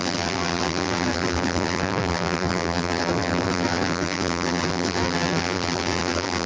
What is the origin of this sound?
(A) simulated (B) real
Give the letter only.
A